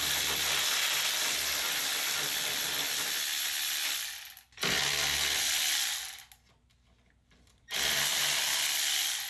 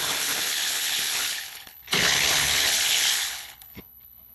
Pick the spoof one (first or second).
second